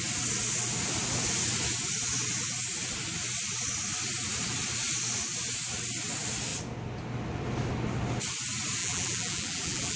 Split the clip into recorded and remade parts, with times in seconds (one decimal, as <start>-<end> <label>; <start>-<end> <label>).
0.0-8.8 recorded; 8.8-10.0 remade